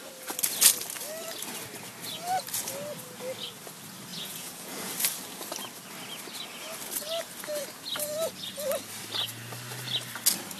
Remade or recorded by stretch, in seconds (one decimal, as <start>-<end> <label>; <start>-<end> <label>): 0.0-4.1 recorded; 4.1-4.9 remade; 4.9-10.6 recorded